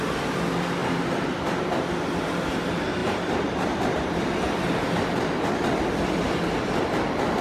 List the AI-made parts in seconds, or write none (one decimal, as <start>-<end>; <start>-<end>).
3.0-4.1